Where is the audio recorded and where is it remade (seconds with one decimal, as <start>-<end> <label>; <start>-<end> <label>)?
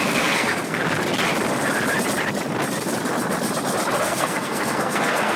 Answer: 0.0-0.8 remade; 0.8-4.0 recorded; 4.0-5.4 remade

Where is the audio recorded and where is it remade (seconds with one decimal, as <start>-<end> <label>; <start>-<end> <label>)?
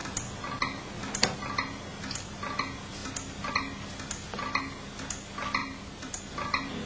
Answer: 0.0-5.6 recorded; 5.6-6.2 remade; 6.2-6.9 recorded